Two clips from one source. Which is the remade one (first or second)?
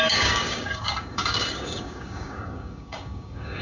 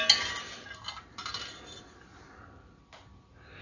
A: first